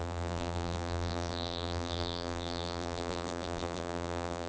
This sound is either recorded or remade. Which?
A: remade